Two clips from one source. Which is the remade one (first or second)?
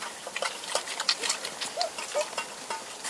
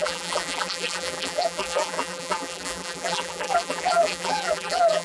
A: second